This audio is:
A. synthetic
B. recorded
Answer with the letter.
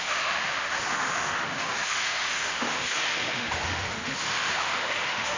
A